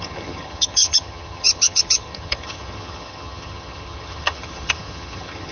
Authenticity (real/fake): fake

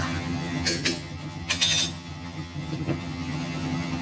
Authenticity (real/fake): fake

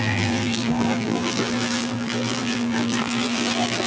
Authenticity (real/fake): fake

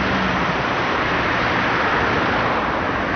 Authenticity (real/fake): real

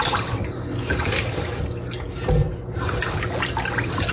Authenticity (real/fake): real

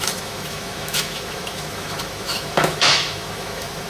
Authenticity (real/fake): fake